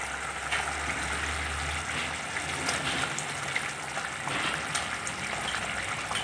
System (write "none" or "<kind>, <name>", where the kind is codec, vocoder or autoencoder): none